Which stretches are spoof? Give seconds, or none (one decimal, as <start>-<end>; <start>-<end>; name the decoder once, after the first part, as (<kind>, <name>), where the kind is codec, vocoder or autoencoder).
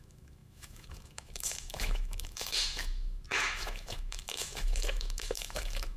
0.0-6.0 (autoencoder, DAC-VAE)